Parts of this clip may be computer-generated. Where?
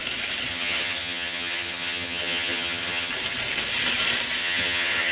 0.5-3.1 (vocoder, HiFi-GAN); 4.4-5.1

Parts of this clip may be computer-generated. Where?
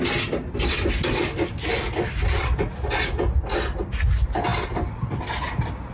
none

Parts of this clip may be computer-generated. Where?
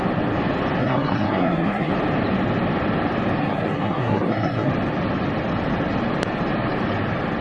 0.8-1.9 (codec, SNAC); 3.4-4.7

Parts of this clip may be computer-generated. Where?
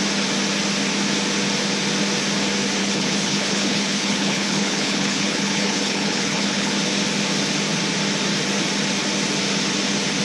2.8-6.7 (codec, HILCodec)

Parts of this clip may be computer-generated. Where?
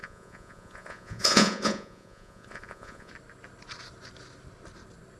0.0-3.1 (vocoder, Vocos)